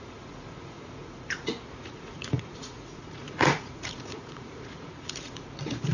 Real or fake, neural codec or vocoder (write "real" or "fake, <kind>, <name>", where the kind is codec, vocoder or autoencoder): fake, vocoder, Vocos